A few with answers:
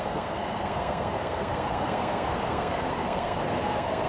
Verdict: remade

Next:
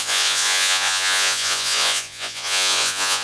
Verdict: remade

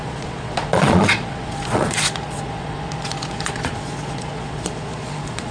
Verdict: remade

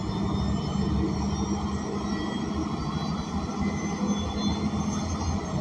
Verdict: recorded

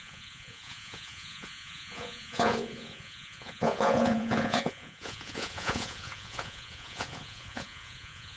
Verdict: remade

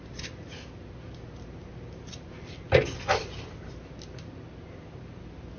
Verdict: recorded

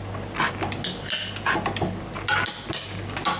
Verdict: recorded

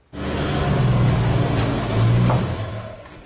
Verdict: recorded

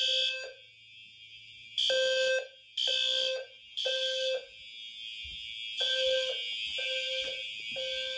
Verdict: recorded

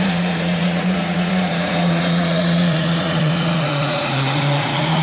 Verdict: remade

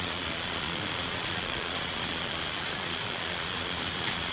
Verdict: remade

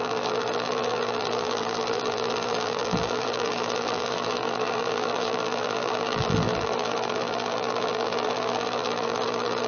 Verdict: remade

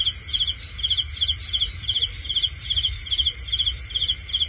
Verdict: remade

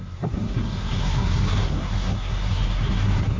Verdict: remade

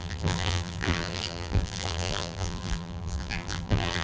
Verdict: remade